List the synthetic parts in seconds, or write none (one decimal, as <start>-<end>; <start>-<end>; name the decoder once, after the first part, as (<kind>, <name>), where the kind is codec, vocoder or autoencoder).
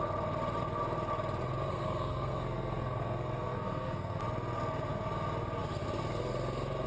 1.7-4.2 (codec, SNAC)